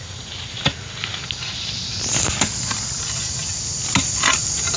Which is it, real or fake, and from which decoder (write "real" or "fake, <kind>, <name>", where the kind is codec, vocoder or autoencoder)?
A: real